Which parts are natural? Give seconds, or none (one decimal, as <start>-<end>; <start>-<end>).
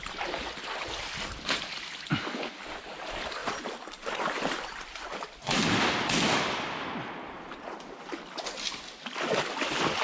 0.0-10.0